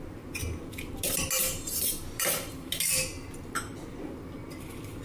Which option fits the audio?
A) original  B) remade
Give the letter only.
A